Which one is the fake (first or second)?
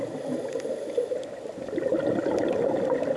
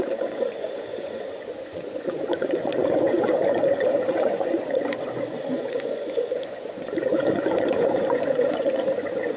second